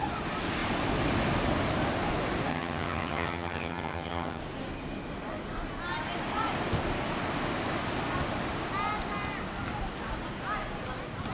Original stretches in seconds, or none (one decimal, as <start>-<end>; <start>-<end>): 0.0-2.5; 4.4-11.3